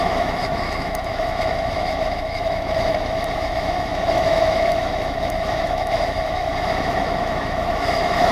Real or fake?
fake